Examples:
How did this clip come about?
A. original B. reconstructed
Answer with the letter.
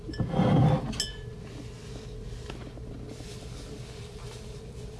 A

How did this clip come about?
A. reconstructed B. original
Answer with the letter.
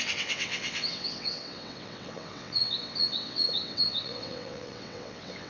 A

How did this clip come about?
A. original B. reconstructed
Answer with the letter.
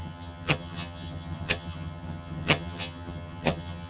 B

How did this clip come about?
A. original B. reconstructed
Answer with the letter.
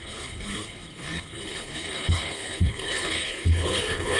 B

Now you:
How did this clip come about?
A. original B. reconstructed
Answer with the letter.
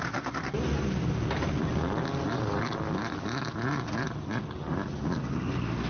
A